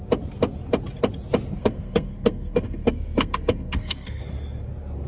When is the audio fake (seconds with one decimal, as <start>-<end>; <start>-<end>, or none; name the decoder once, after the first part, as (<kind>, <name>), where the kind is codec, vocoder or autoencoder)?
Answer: 1.6-4.2 (codec, SNAC)